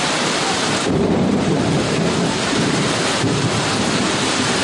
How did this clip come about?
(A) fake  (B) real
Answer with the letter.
A